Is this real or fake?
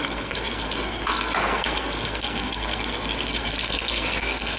fake